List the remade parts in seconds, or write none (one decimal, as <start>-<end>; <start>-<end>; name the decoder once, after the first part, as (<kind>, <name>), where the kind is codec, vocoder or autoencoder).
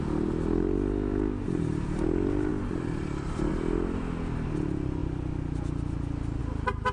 none